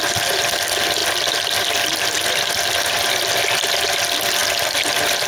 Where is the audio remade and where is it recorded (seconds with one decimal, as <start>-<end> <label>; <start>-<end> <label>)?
0.0-5.3 recorded